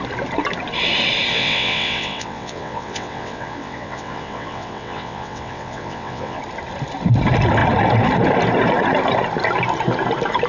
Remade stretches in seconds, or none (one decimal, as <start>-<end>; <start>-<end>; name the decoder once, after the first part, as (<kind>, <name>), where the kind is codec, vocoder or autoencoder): 1.3-6.4 (vocoder, WaveNeXt)